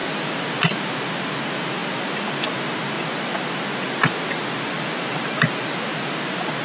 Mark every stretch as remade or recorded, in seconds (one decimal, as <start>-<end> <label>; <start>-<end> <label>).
0.0-6.6 recorded